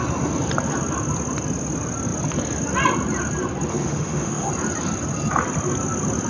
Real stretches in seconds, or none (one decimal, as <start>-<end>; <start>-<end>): 0.0-3.7; 4.5-6.3